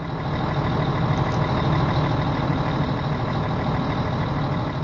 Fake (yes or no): no